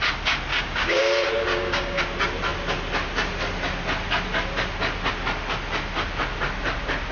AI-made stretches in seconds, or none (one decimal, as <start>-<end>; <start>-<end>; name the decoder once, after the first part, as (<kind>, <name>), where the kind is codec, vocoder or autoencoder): 0.5-1.0 (codec, DAC); 1.5-2.0